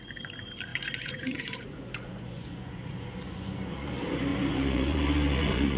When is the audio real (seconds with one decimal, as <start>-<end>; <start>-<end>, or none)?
0.0-0.7; 3.9-4.3